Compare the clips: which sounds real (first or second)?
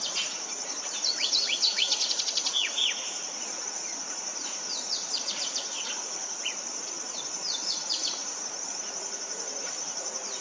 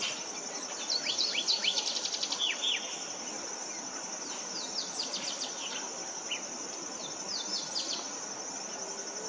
second